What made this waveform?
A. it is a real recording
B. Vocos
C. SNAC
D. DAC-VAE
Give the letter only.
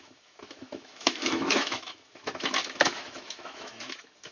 D